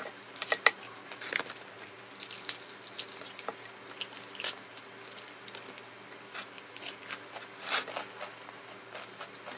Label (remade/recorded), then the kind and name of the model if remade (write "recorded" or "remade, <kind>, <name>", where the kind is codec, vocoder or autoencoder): recorded